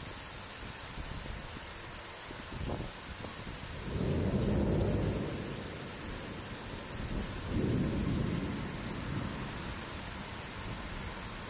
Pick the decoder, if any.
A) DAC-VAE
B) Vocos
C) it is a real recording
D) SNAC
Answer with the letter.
C